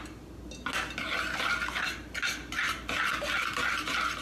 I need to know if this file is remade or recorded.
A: recorded